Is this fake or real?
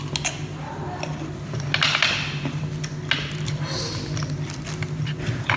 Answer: real